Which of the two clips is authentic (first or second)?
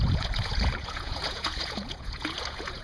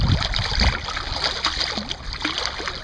second